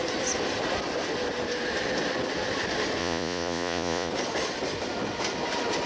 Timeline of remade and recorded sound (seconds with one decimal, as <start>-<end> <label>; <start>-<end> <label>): 0.0-3.0 recorded; 3.0-4.1 remade; 4.1-5.9 recorded